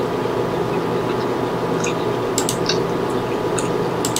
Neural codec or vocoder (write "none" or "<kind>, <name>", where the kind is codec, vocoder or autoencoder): none